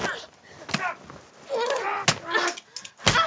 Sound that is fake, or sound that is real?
real